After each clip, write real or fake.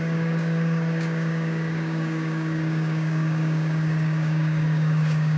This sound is fake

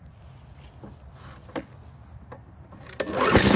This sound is real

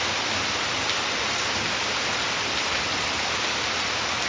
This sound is real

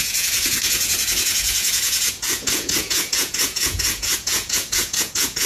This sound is fake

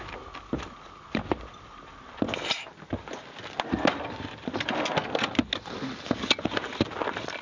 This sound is real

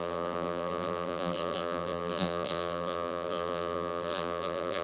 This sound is fake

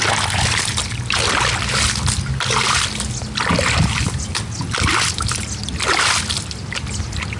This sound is real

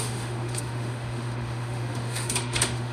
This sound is fake